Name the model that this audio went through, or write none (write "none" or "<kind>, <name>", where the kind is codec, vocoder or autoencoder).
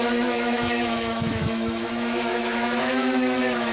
autoencoder, DAC-VAE